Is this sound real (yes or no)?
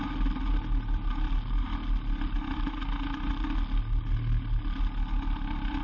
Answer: yes